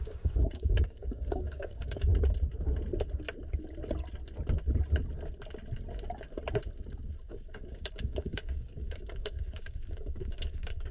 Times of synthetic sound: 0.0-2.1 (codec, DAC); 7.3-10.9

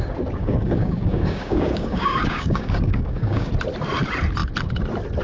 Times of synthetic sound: 0.4-3.5 (codec, DAC)

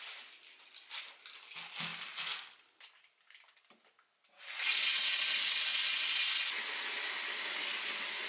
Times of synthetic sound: none

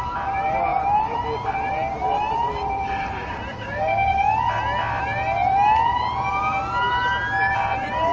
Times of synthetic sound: 3.5-4.1 (codec, DAC)